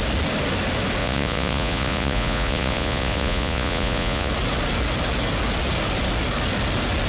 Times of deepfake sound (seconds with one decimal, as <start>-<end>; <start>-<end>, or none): 1.0-4.3